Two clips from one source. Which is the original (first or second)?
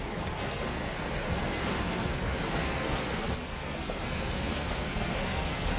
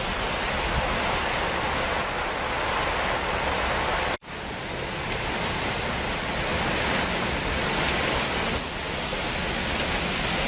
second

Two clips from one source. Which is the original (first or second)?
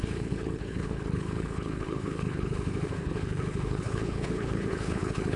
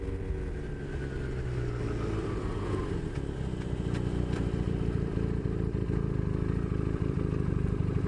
second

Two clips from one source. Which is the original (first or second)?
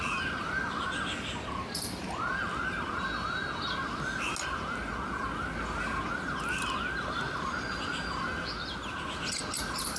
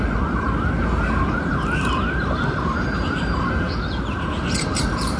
first